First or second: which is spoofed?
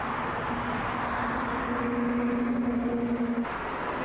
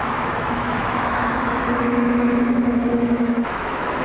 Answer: second